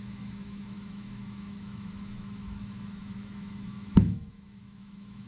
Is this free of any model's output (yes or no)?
no